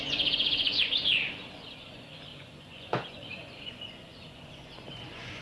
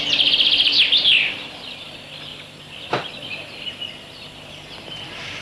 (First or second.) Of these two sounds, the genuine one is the second